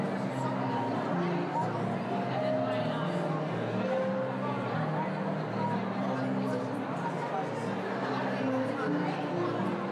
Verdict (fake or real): real